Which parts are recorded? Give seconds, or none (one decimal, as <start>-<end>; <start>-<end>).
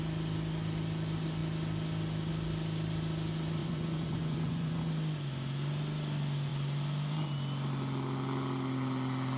0.0-3.6; 4.9-9.4